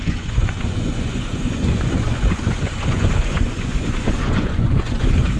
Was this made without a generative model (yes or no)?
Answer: no